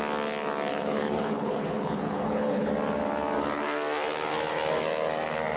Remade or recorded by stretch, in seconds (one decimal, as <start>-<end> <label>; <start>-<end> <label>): 0.0-0.7 recorded; 0.7-2.7 remade; 2.7-5.6 recorded

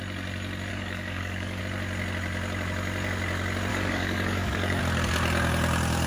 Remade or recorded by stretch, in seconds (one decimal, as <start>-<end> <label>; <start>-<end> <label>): 0.0-0.7 recorded; 0.7-1.6 remade; 1.6-3.7 recorded; 3.7-4.8 remade; 4.8-6.1 recorded

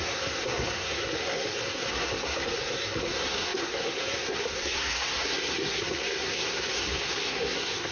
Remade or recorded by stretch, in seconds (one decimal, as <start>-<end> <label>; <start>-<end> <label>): 0.0-7.9 remade

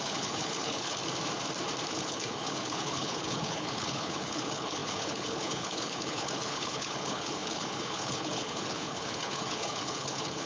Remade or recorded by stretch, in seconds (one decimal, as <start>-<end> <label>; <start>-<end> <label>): 0.0-1.0 remade; 1.0-1.9 recorded; 1.9-10.5 remade

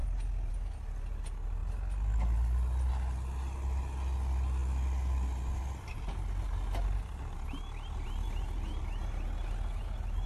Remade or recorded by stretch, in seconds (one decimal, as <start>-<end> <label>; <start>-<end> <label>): 0.0-10.3 recorded

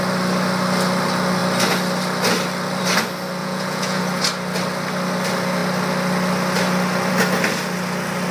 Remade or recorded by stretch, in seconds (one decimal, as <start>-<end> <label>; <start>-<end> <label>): 0.0-3.4 recorded; 3.4-4.0 remade; 4.0-8.3 recorded

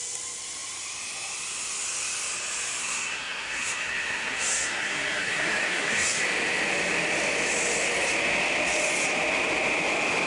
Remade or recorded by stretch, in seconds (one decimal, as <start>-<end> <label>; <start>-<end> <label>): 0.0-2.8 recorded; 2.8-6.2 remade; 6.2-10.3 recorded

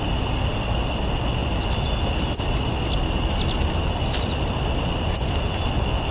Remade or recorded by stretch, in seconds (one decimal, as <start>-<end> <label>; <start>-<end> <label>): 0.0-6.1 recorded